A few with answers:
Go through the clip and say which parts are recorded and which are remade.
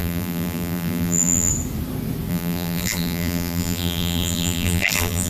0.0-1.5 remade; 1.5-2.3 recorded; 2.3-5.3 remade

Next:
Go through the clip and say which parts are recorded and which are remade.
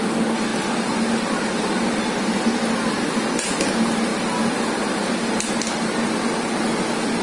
0.0-7.2 recorded